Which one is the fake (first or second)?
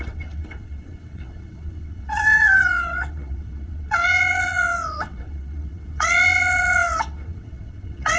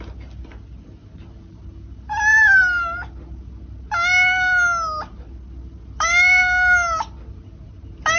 first